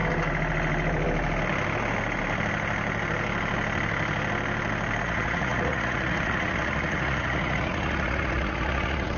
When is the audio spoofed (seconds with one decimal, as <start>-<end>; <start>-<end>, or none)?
5.0-9.2